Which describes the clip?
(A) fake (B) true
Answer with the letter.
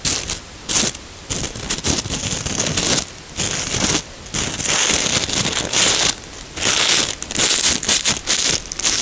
B